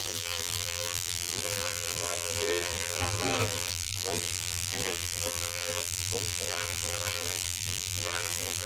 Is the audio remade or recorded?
remade